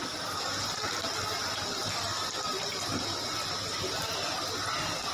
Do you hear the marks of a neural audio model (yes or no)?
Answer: yes